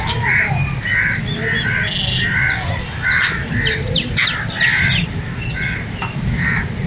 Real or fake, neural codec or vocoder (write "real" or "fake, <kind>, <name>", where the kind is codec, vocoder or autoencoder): real